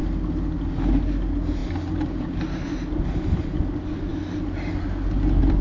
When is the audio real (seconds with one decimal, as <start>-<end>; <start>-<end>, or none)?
0.0-5.6